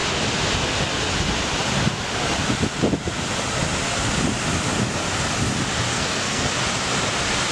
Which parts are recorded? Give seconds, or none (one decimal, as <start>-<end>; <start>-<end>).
0.0-5.9; 6.5-7.5